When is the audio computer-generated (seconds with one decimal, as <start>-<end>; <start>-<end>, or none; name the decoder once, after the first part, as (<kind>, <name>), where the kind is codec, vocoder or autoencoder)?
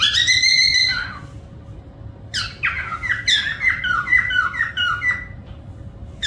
none